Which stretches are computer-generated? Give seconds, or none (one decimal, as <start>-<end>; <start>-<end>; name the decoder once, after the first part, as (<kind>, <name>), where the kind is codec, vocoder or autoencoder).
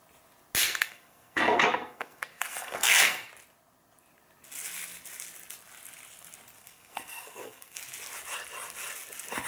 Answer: 0.6-3.3 (codec, SNAC); 6.6-7.8